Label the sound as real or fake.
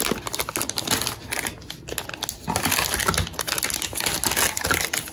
real